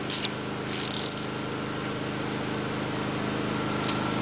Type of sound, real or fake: real